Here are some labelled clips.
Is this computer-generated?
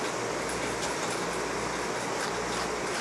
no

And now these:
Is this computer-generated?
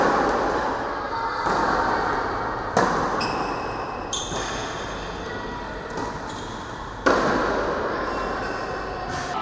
no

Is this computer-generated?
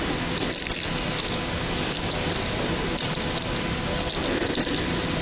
no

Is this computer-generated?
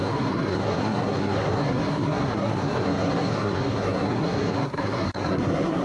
yes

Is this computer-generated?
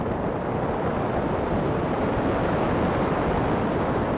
no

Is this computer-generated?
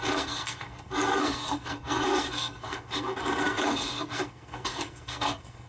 yes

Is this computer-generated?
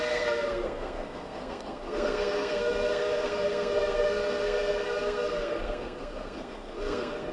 yes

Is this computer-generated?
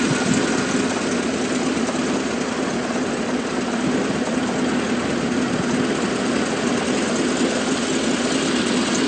no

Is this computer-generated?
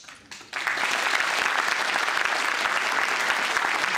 no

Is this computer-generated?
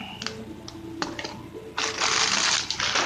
no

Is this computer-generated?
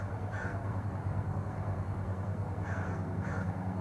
yes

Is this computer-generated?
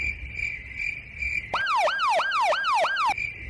no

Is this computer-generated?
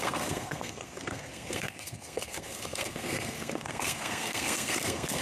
yes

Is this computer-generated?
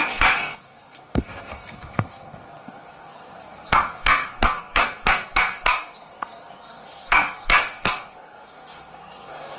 yes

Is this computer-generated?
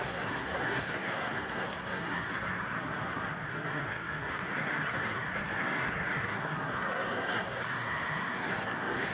yes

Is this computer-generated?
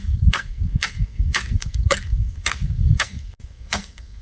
yes